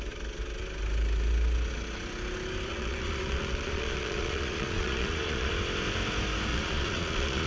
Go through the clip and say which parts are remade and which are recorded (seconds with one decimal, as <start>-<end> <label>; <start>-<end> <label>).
0.0-2.7 recorded; 2.7-5.5 remade; 5.5-6.5 recorded; 6.5-7.5 remade